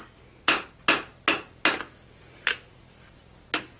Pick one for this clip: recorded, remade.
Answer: recorded